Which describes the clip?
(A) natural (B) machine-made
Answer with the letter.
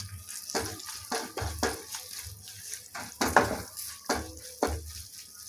A